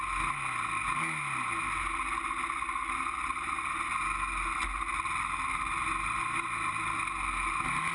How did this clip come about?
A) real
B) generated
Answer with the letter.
A